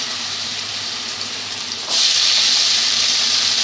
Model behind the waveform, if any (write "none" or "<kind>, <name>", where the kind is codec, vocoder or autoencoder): vocoder, BigVGAN v2